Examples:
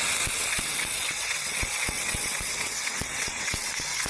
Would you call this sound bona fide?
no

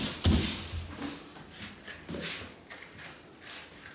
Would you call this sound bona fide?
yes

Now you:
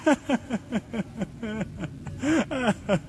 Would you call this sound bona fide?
yes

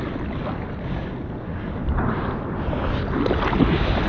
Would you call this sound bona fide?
yes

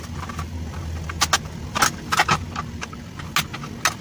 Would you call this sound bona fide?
yes